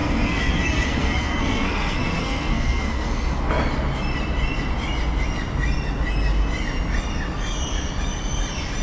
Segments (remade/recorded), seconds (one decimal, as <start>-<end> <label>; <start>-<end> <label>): 0.0-3.5 remade; 3.5-8.8 recorded